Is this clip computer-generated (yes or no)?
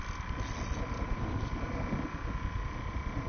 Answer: no